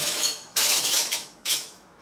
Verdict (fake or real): fake